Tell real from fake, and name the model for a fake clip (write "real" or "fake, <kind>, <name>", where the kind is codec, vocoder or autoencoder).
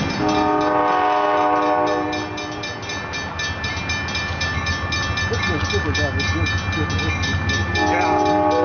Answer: real